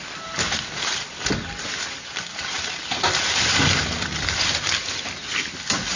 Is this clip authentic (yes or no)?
yes